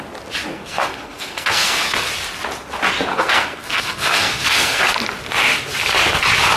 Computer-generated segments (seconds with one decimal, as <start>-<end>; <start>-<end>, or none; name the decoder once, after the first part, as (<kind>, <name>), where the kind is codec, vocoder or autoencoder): 0.5-2.1 (codec, SNAC); 3.1-4.8